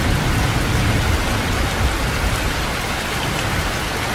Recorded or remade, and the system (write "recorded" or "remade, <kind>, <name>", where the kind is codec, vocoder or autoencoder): recorded